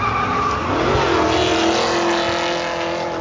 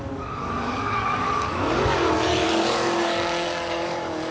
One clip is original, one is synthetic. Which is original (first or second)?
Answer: first